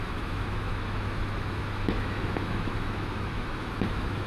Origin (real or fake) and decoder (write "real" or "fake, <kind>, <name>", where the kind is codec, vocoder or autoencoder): fake, autoencoder, DAC-VAE